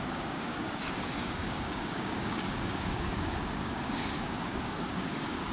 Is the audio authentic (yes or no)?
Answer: no